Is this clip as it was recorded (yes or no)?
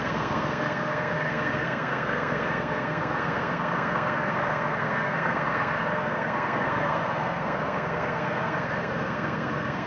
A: no